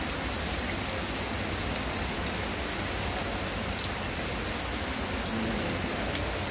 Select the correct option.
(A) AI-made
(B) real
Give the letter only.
B